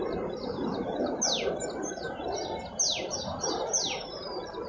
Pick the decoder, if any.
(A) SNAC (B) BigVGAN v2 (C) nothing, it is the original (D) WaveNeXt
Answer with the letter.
C